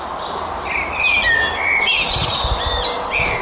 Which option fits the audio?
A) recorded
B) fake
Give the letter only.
A